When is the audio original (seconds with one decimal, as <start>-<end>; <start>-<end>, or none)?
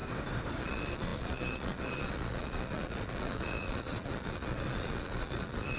0.0-0.6